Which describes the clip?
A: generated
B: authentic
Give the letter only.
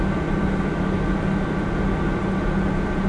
B